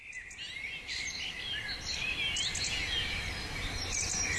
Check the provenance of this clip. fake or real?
real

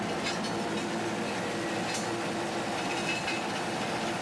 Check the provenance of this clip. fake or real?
real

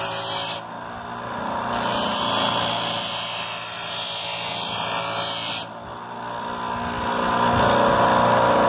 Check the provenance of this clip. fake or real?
real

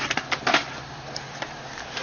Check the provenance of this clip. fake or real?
real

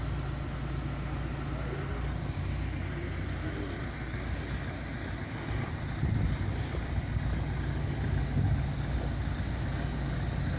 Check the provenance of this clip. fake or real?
real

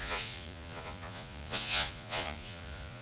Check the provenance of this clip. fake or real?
fake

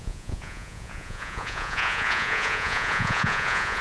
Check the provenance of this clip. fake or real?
fake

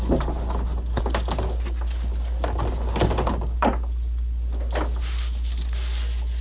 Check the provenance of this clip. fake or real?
real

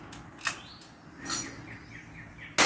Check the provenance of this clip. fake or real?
real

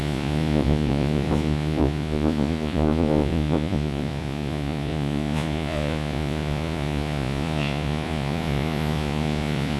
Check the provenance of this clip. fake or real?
fake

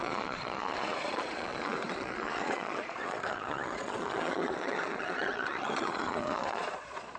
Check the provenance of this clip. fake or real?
fake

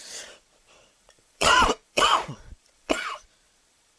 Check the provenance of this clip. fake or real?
fake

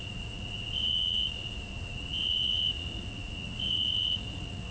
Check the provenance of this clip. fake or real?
fake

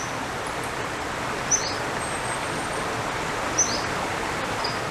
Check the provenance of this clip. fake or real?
real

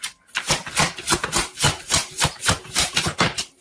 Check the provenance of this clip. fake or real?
real